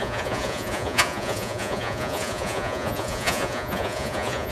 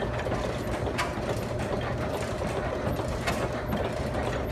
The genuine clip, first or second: second